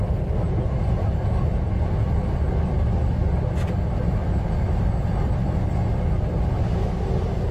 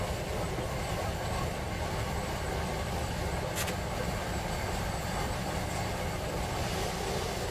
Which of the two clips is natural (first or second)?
first